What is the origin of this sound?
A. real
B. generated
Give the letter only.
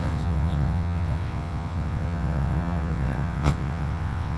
B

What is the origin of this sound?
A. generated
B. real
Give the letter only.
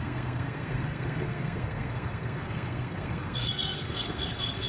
A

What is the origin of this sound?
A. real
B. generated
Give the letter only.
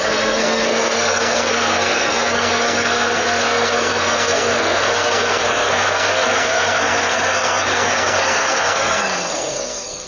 B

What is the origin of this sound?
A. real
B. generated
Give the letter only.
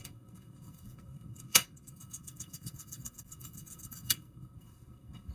B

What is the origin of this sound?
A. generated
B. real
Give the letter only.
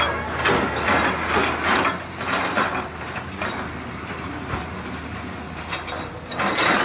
B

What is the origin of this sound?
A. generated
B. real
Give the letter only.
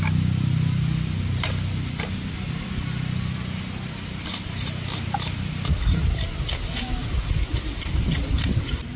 B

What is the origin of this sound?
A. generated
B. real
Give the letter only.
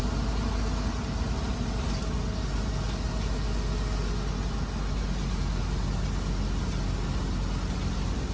B